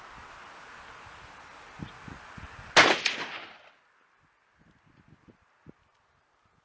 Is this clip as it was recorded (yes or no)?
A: yes